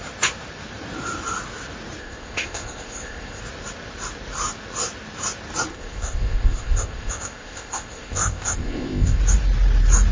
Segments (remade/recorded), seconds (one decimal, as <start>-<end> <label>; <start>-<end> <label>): 0.0-2.0 recorded; 2.0-3.4 remade; 3.4-5.7 recorded; 5.7-9.2 remade; 9.2-10.1 recorded

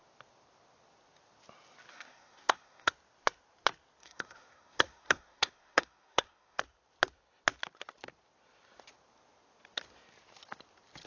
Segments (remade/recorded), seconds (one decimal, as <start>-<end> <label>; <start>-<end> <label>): 0.0-1.9 recorded; 1.9-2.9 remade; 2.9-4.0 recorded; 4.0-6.6 remade; 6.6-11.1 recorded

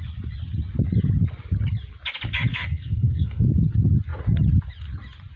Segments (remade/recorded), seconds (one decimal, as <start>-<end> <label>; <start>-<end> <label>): 0.0-2.5 recorded; 2.5-3.4 remade; 3.4-5.4 recorded

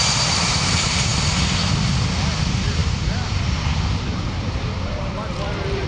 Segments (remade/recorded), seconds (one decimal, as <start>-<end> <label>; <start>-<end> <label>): 0.0-1.1 remade; 1.1-2.4 recorded; 2.4-5.9 remade

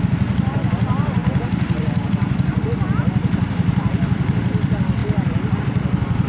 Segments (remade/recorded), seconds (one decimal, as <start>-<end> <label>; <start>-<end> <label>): 0.0-1.2 recorded; 1.2-2.6 remade; 2.6-5.0 recorded; 5.0-5.6 remade; 5.6-6.3 recorded

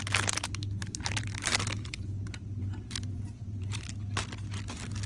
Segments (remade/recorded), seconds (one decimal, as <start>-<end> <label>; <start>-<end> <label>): 0.0-0.8 recorded; 0.8-3.9 remade; 3.9-5.1 recorded

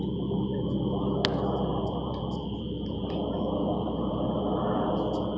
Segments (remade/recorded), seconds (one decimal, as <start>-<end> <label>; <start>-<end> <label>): 0.0-1.7 recorded; 1.7-4.9 remade; 4.9-5.4 recorded

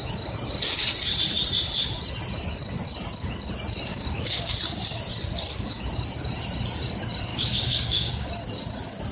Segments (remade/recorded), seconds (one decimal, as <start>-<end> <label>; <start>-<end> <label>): 0.0-3.9 recorded; 3.9-4.5 remade; 4.5-7.3 recorded; 7.3-8.3 remade; 8.3-9.1 recorded